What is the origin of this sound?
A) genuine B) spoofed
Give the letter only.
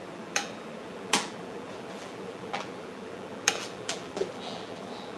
B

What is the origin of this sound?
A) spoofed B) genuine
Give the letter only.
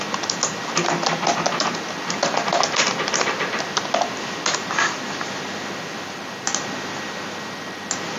B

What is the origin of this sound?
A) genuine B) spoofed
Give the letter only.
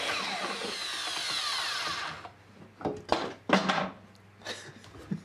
A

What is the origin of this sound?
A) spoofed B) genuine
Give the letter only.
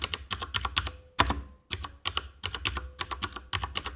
B